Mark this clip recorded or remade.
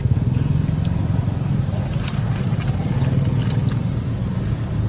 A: recorded